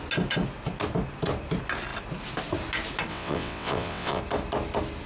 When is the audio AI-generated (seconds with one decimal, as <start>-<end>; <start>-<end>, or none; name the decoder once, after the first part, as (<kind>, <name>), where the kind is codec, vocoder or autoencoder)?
3.1-4.2 (vocoder, WaveNeXt)